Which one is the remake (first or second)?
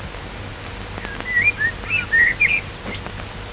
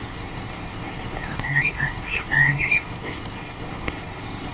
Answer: second